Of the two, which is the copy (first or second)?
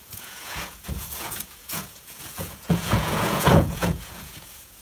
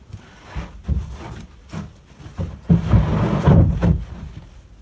first